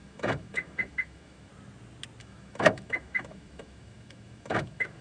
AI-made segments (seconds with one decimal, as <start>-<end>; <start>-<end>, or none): 0.0-1.5; 2.2-5.0